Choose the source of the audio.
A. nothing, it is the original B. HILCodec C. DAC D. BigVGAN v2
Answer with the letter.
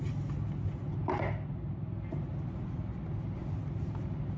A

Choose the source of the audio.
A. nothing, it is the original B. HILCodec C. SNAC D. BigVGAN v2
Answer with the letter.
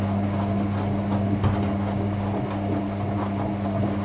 A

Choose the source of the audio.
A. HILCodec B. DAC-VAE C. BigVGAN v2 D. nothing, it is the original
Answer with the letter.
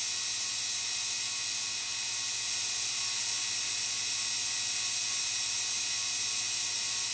D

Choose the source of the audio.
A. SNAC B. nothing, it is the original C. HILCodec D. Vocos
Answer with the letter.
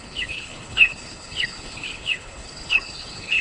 C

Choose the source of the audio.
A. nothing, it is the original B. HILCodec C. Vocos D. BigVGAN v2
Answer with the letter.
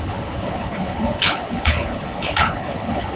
B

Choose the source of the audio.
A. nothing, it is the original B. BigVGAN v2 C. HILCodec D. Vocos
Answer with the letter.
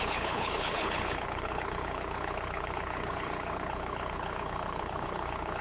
C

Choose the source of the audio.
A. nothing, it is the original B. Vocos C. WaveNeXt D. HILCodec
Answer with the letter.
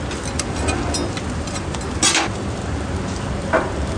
A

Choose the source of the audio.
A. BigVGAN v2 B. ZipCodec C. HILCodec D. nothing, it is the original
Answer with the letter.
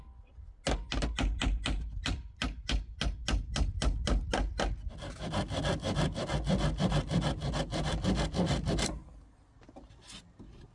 D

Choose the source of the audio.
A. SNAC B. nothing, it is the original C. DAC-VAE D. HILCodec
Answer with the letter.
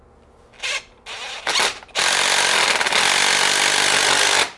B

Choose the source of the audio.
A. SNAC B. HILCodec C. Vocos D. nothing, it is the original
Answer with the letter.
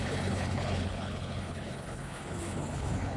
B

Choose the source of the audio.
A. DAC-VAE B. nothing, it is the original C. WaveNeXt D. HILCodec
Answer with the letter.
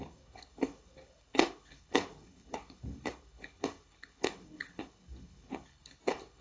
D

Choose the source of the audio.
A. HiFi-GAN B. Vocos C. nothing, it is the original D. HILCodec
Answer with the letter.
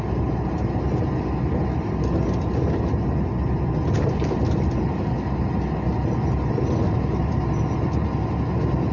C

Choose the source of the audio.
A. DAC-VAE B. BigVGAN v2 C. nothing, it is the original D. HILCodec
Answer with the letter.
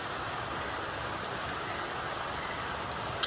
C